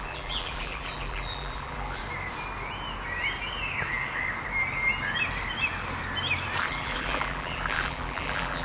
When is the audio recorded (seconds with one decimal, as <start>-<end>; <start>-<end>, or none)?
2.0-6.7